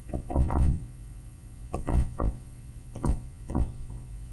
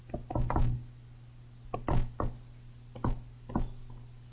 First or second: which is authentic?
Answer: second